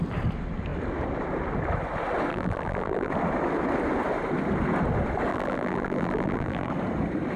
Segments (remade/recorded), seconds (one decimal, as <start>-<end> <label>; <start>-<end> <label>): 0.0-2.3 recorded; 2.3-3.1 remade; 3.1-5.3 recorded; 5.3-6.7 remade; 6.7-7.4 recorded